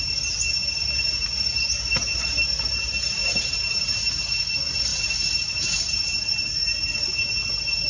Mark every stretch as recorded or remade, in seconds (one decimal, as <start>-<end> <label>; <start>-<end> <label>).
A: 0.0-3.2 recorded; 3.2-4.3 remade; 4.3-7.9 recorded